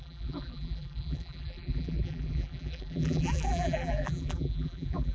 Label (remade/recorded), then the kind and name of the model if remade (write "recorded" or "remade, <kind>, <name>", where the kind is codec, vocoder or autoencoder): remade, vocoder, BigVGAN v2